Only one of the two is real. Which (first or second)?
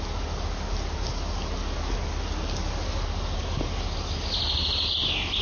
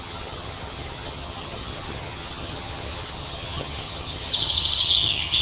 first